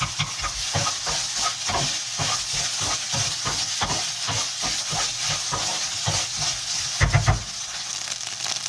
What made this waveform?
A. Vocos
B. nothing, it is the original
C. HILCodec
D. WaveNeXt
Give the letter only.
B